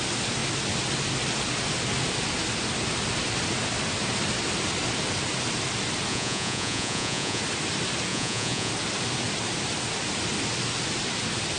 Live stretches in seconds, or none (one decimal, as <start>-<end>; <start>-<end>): 0.0-6.1; 7.4-8.1; 8.7-11.6